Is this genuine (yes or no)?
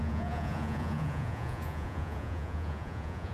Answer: no